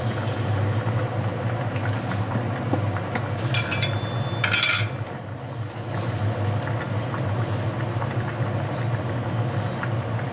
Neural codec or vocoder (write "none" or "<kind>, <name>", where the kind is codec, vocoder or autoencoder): none